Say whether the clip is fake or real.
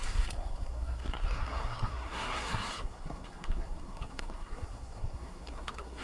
fake